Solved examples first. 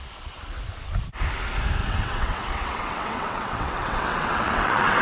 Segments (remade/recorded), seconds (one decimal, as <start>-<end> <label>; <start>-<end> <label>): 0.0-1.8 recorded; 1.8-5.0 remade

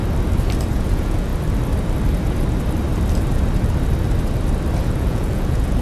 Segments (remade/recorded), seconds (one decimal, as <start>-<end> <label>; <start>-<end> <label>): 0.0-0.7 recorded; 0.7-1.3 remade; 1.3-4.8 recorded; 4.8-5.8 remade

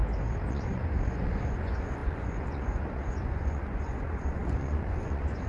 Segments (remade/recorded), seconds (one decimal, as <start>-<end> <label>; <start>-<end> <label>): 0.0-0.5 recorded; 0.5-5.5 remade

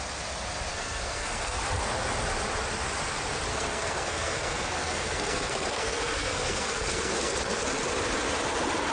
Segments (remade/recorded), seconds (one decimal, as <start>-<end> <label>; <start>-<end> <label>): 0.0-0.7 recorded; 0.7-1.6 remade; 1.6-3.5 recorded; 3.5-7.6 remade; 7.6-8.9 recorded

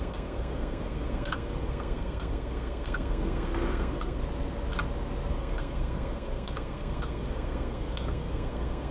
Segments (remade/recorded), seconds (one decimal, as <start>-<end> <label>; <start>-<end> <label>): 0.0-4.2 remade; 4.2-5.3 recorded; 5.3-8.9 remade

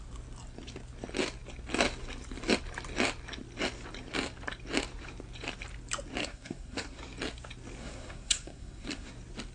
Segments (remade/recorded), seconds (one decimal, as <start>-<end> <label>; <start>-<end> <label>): 0.0-6.2 recorded; 6.2-7.0 remade; 7.0-7.8 recorded; 7.8-9.1 remade; 9.1-9.5 recorded

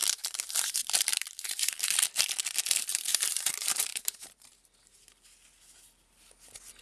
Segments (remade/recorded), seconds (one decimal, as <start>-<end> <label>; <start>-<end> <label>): 0.0-2.1 remade; 2.1-2.9 recorded; 2.9-3.5 remade; 3.5-3.9 recorded; 3.9-4.6 remade; 4.6-6.8 recorded